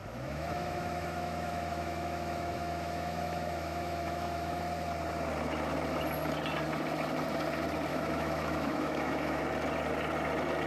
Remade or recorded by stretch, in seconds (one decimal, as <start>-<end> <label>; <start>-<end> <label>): 0.0-4.6 remade; 4.6-7.9 recorded; 7.9-9.4 remade; 9.4-10.7 recorded